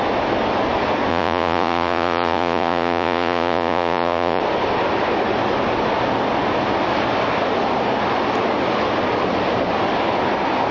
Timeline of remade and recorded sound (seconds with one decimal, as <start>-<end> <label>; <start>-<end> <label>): 0.0-1.1 recorded; 1.1-4.4 remade; 4.4-10.7 recorded